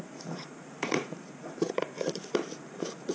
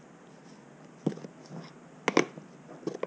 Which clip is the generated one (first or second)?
first